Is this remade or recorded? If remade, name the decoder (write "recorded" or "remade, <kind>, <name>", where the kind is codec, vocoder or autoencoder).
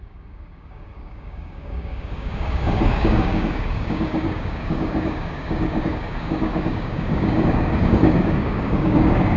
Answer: remade, codec, DAC